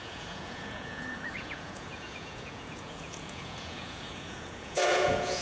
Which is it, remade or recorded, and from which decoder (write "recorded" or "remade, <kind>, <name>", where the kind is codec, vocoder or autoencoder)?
remade, vocoder, Vocos